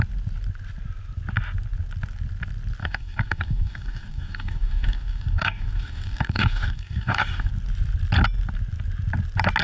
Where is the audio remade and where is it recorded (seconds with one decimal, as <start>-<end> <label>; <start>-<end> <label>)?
0.0-2.8 recorded; 2.8-7.5 remade; 7.5-9.6 recorded